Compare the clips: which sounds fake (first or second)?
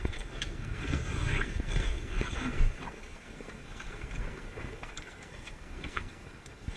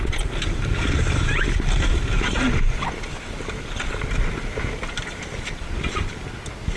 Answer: first